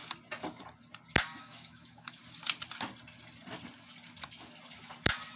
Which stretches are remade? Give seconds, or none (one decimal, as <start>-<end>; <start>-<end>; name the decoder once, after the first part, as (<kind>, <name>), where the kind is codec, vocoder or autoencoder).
1.4-2.2 (autoencoder, DAC-VAE)